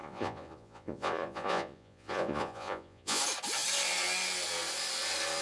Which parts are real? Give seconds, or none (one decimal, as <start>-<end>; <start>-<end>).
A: 3.2-5.4